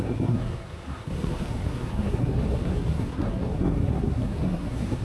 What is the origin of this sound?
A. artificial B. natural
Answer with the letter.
A